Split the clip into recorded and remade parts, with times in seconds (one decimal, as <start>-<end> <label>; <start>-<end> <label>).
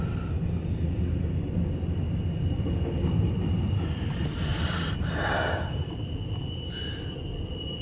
0.0-4.5 recorded; 4.5-7.8 remade